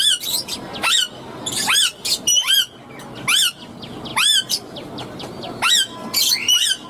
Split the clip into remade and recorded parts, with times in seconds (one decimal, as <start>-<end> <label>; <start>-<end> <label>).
0.0-6.9 recorded